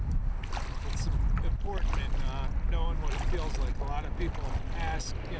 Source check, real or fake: real